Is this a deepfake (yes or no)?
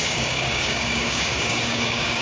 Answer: yes